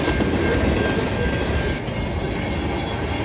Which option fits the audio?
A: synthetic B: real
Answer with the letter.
B